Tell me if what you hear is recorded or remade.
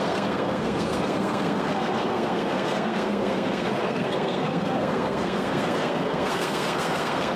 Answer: remade